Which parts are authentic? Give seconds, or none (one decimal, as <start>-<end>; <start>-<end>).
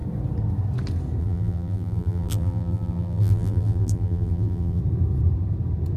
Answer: 0.0-1.2; 4.8-6.0